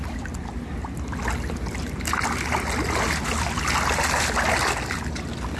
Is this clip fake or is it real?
real